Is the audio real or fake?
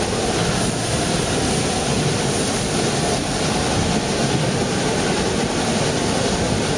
real